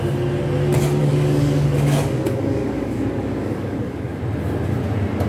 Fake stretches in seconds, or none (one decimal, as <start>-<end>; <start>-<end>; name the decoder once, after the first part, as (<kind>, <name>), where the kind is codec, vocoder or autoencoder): 1.0-4.2 (codec, DAC)